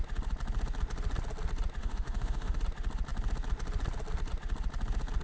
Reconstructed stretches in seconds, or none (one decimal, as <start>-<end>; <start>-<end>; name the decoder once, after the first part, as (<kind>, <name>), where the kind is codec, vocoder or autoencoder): 1.8-2.6 (autoencoder, DAC-VAE)